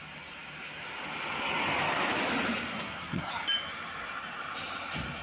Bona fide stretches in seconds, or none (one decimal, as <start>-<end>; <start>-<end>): 0.0-2.7; 3.3-5.2